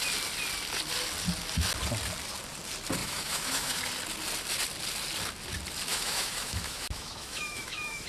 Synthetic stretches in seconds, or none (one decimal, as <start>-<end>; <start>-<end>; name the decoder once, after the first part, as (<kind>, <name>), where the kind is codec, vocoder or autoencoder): 3.0-3.8 (autoencoder, DAC-VAE); 5.9-8.1